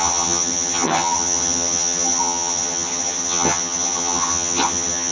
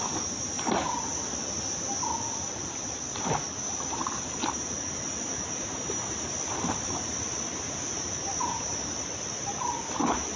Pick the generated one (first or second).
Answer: first